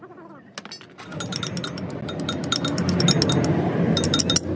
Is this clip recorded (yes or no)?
yes